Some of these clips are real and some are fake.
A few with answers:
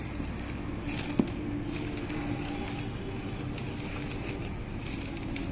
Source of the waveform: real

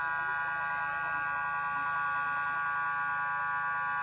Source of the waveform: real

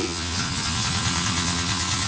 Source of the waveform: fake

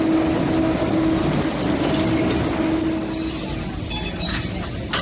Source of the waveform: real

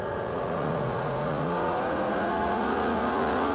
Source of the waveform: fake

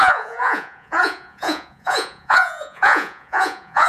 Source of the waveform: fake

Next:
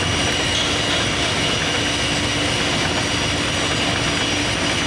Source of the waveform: real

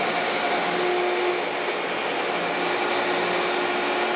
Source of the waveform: real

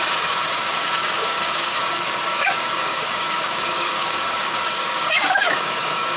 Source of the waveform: fake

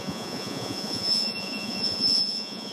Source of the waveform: fake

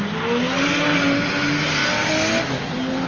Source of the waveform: real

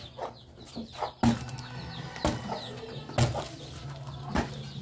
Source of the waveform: real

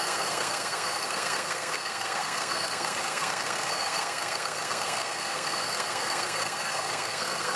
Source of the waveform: fake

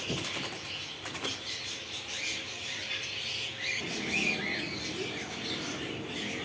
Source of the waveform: real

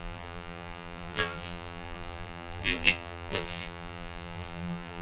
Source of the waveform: fake